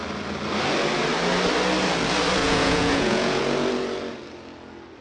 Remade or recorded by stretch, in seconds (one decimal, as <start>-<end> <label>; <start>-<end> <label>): 0.0-2.4 recorded; 2.4-3.4 remade; 3.4-5.0 recorded